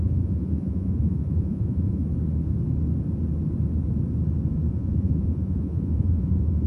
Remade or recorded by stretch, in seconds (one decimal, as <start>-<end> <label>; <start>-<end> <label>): 0.0-2.0 remade; 2.0-4.7 recorded; 4.7-6.7 remade

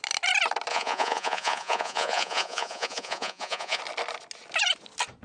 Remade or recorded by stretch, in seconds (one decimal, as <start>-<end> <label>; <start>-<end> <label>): 0.0-0.7 recorded; 0.7-3.8 remade; 3.8-5.2 recorded

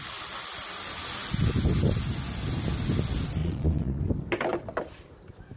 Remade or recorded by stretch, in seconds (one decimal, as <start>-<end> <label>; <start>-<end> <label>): 0.0-3.4 recorded; 3.4-4.0 remade; 4.0-5.6 recorded

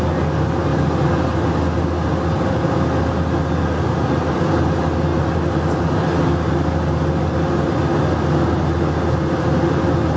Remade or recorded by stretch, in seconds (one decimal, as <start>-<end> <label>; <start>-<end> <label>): 0.0-10.2 recorded

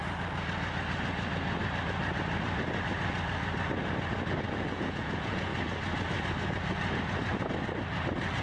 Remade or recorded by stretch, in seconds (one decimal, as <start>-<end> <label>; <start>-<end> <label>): 0.0-4.5 recorded; 4.5-5.5 remade; 5.5-8.4 recorded